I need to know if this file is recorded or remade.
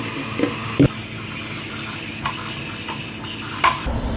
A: recorded